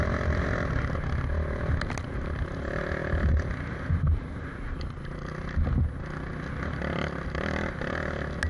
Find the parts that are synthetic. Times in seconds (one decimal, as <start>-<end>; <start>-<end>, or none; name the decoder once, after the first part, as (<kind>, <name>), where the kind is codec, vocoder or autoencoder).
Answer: none